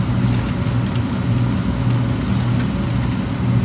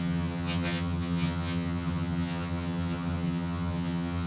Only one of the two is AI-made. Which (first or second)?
second